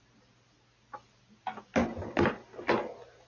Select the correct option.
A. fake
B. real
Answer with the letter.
B